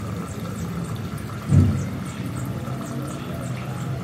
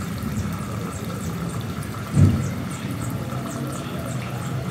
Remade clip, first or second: second